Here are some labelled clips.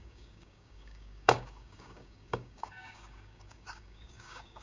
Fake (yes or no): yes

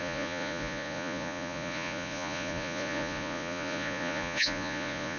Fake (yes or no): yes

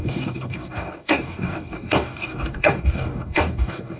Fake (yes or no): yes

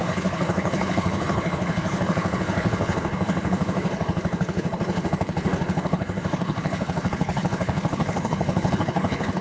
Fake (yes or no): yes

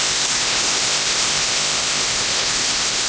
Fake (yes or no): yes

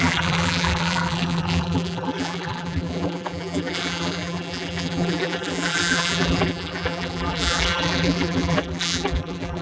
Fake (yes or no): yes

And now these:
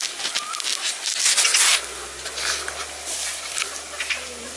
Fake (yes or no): no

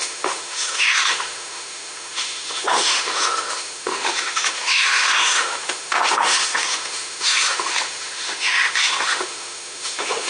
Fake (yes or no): yes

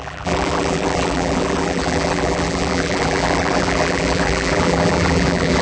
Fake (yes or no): yes